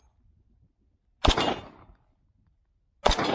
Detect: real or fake real